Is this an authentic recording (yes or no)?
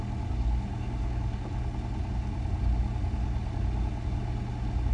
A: yes